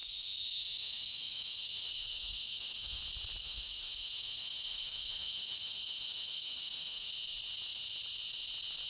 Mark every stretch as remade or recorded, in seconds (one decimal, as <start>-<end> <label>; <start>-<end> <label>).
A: 0.0-3.0 remade; 3.0-3.4 recorded; 3.4-7.1 remade; 7.1-8.9 recorded